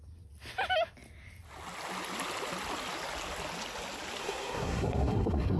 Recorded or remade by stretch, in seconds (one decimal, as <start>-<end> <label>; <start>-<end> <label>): 0.0-4.2 recorded; 4.2-5.6 remade